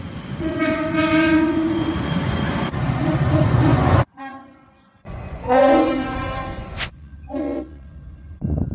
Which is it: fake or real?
fake